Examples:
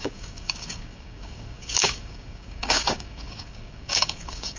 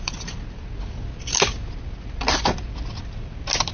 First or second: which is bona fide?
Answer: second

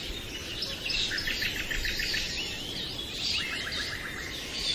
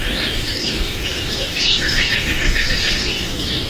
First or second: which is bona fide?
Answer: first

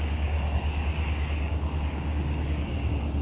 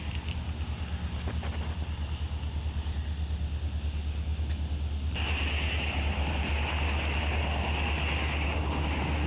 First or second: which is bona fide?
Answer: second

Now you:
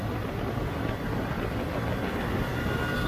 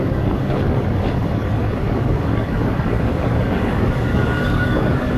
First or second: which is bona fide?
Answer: first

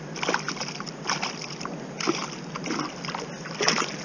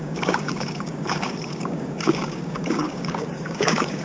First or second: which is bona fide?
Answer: first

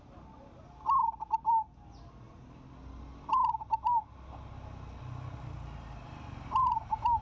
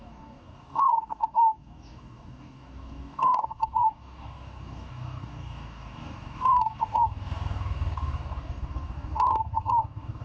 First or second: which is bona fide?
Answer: first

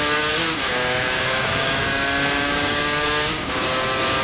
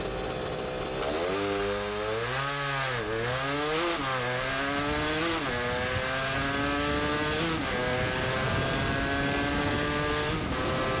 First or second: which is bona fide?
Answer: second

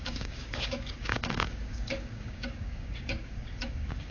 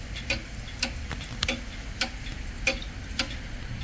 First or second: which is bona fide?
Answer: second